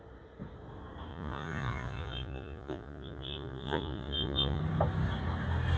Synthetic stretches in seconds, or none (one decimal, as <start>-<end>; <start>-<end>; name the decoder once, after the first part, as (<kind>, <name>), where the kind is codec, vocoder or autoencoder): 1.1-4.6 (vocoder, Vocos)